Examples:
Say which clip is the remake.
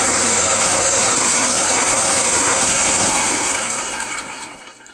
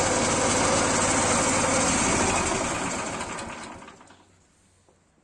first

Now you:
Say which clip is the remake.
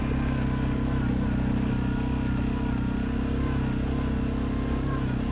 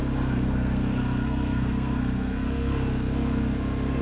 second